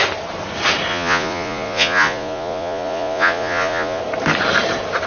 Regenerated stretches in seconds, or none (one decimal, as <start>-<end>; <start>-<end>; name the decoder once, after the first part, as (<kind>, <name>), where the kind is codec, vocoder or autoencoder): 0.9-4.0 (vocoder, Vocos)